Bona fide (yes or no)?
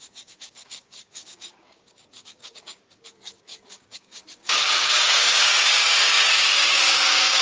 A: no